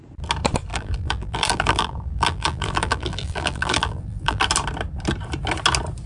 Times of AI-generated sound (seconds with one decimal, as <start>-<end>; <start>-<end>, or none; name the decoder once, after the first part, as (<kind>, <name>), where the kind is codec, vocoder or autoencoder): 0.7-4.4 (vocoder, BigVGAN v2)